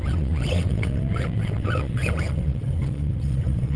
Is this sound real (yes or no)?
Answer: no